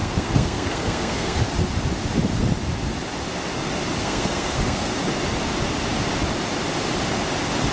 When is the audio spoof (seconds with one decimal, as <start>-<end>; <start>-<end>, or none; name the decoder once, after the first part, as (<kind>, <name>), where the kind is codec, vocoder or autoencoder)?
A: 0.0-1.4 (codec, SNAC); 4.0-5.0